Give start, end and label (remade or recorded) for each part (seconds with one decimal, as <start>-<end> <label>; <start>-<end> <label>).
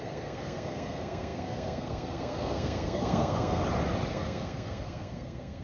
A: 0.0-3.6 remade; 3.6-4.1 recorded; 4.1-5.6 remade